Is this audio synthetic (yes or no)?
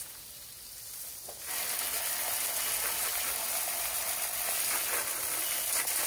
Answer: no